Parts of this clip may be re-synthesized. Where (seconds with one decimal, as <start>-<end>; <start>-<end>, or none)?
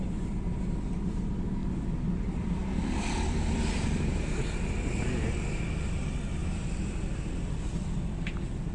1.6-5.0; 6.4-8.2